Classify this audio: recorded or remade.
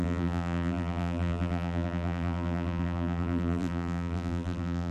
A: remade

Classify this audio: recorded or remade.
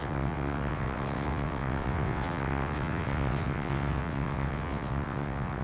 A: remade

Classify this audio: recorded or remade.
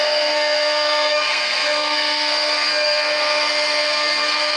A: remade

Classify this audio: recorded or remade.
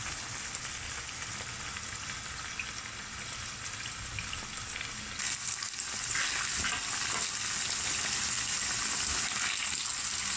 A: recorded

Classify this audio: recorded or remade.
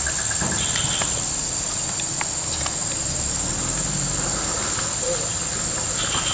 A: recorded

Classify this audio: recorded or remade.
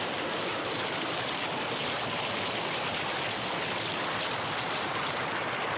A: recorded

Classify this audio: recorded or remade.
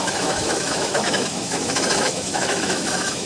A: remade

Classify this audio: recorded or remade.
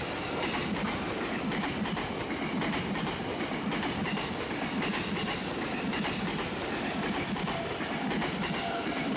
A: recorded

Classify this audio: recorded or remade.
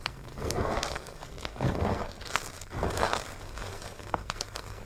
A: remade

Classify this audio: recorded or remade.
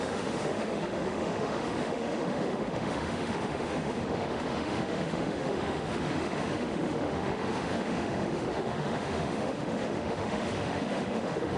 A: remade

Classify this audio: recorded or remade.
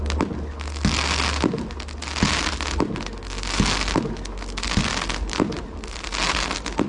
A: recorded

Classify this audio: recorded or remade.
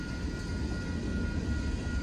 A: recorded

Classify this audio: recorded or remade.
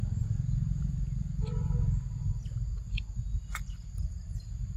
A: recorded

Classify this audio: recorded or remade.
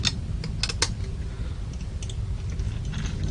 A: recorded